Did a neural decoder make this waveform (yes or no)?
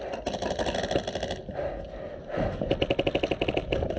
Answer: no